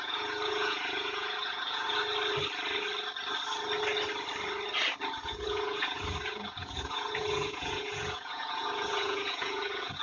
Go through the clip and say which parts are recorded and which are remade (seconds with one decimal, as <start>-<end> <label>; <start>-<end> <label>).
0.0-2.0 remade; 2.0-5.2 recorded; 5.2-10.0 remade